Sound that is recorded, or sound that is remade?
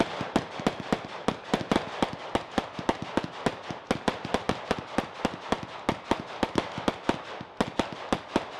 recorded